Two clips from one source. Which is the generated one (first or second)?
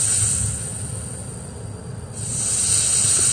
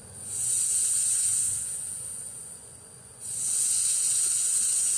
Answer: second